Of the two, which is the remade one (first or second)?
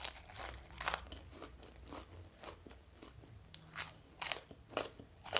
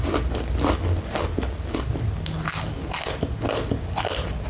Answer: first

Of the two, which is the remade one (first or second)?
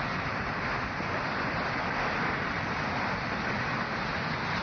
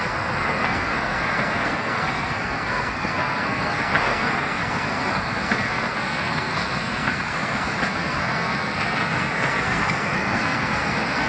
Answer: second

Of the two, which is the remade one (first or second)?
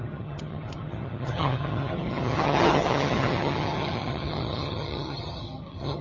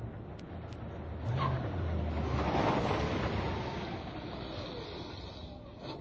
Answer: first